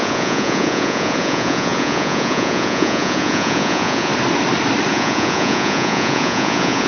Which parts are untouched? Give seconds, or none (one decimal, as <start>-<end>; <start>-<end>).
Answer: 4.1-4.9